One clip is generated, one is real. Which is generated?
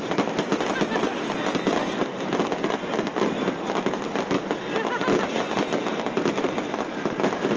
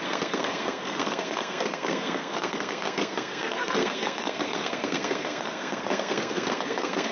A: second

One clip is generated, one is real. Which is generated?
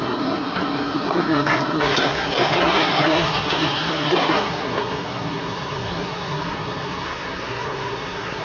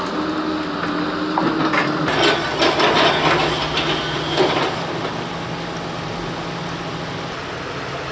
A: first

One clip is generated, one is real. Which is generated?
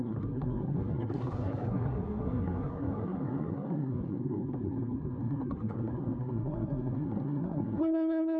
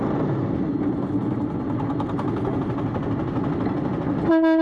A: first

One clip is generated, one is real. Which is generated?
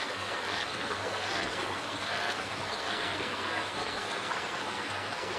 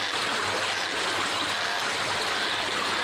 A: first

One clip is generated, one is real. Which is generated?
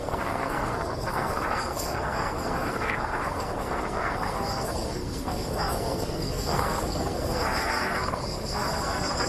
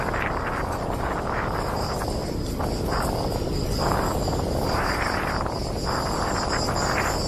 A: first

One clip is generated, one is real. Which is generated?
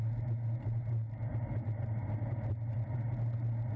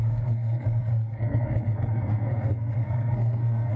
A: second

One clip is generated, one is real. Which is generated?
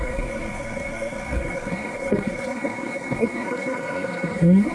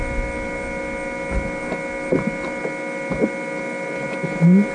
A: first